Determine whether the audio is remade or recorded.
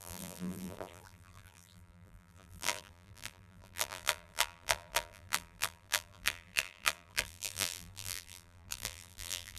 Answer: remade